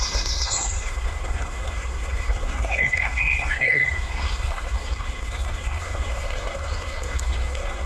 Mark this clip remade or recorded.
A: remade